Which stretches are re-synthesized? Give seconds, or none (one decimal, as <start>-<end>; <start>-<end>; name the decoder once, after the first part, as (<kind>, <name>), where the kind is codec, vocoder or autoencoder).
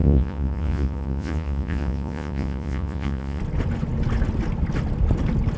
0.0-3.4 (vocoder, Vocos)